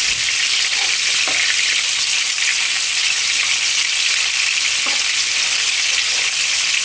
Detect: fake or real real